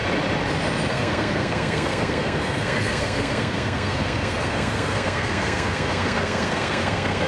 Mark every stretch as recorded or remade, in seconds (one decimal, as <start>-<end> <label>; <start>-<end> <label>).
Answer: 0.0-0.9 recorded; 0.9-7.3 remade